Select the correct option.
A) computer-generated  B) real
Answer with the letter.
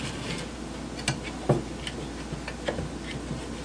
B